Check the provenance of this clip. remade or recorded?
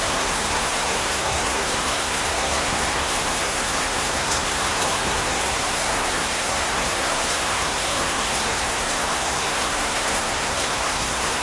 remade